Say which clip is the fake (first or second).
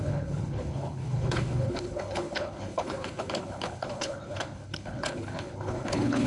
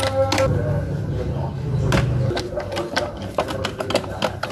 first